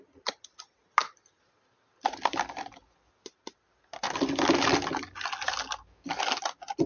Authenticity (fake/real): real